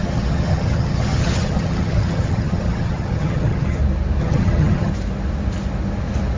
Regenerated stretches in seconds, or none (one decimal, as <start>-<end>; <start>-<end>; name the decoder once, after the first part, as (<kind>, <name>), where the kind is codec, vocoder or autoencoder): 0.0-3.8 (vocoder, HiFi-GAN); 4.2-4.9